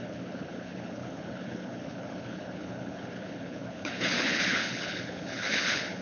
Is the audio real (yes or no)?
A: no